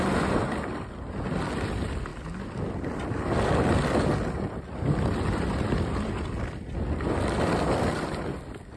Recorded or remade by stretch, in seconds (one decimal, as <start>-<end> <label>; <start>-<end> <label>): 0.0-8.8 recorded